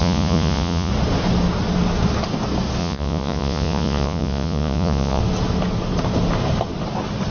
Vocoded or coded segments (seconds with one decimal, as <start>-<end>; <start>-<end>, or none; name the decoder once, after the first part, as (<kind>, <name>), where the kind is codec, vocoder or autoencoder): 0.0-0.9 (vocoder, Vocos); 2.8-5.2